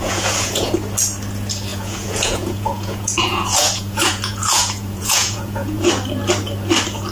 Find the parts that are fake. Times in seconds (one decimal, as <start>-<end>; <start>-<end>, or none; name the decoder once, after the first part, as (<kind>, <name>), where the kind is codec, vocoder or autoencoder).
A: 0.0-0.7 (vocoder, Vocos); 1.7-5.9